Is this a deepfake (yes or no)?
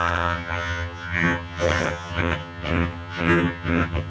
yes